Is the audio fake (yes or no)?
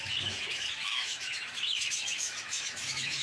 yes